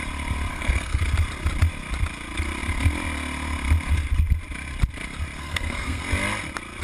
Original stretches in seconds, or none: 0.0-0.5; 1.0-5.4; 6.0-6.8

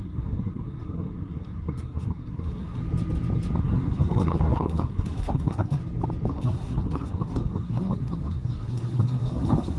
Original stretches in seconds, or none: 2.8-3.6; 5.8-6.3

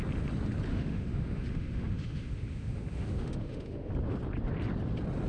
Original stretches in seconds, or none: 0.0-0.7; 3.9-5.3

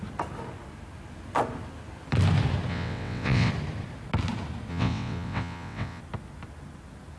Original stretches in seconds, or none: 0.0-2.7; 3.5-4.7; 6.0-7.2

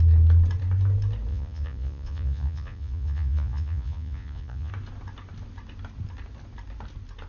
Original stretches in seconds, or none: 0.0-1.3; 4.7-7.3